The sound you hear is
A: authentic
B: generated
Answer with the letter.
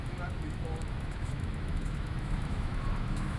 B